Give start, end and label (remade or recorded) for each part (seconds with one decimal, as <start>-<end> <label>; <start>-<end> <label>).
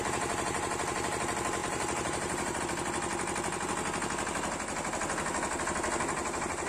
0.0-1.2 remade; 1.2-1.6 recorded; 1.6-2.6 remade; 2.6-6.7 recorded